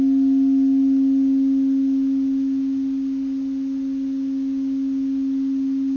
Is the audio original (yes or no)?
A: yes